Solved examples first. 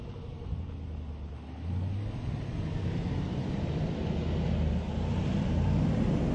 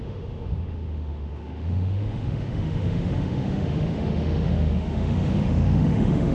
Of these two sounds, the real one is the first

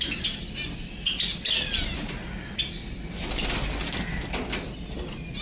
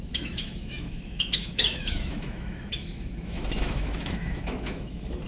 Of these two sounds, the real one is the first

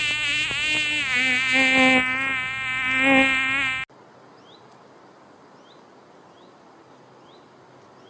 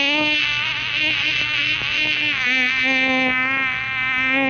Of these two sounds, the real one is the first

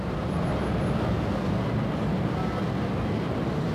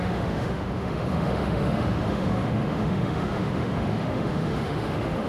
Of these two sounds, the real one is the first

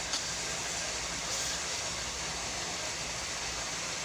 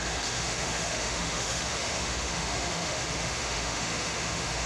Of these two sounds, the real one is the first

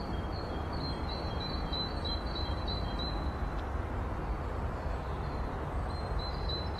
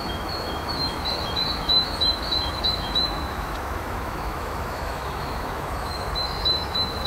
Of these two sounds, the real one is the first